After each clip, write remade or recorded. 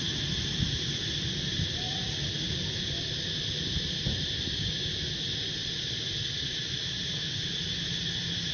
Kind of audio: recorded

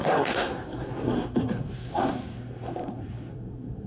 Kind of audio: remade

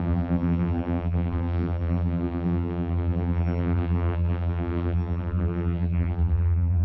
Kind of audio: remade